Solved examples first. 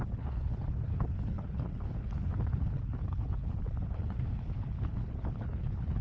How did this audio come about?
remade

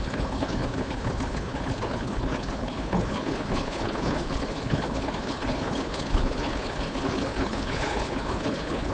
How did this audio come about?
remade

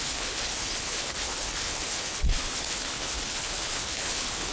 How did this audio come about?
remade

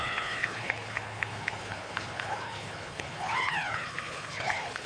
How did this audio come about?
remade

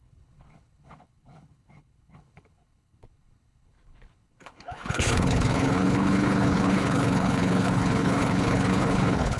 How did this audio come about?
remade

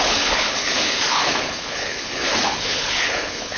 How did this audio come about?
remade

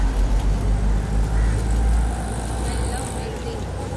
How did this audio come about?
recorded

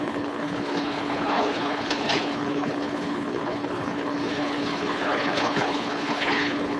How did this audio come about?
remade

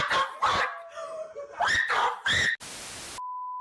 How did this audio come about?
recorded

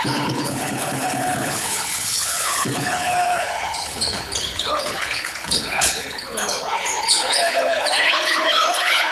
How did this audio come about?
remade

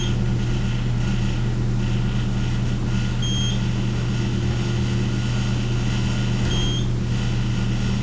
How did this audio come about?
recorded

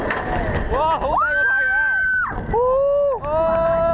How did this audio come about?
recorded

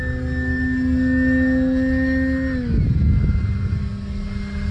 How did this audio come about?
recorded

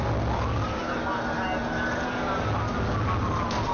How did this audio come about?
recorded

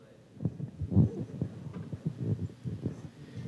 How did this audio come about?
recorded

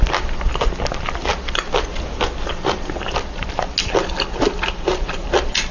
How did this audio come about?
recorded